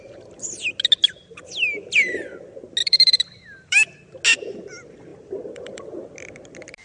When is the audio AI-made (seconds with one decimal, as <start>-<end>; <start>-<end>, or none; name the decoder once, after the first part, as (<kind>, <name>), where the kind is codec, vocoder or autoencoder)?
2.8-3.9 (vocoder, BigVGAN v2); 5.1-5.9